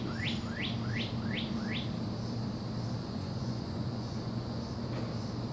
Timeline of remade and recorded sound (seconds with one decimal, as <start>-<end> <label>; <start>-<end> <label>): 0.0-3.0 recorded; 3.0-4.7 remade; 4.7-5.5 recorded